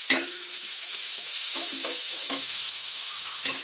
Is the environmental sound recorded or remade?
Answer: remade